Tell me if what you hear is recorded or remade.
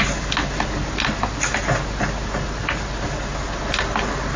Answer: recorded